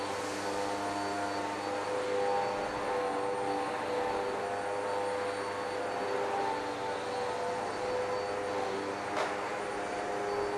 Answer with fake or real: real